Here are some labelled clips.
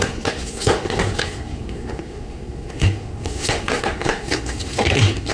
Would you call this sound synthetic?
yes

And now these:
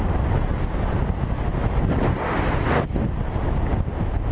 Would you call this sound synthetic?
no